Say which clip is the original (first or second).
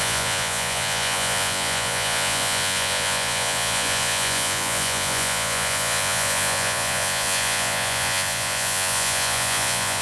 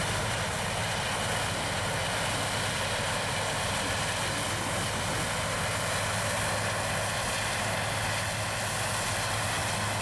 second